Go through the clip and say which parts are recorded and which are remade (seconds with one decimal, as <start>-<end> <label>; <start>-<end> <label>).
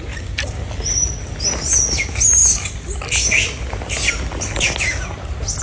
0.0-5.6 recorded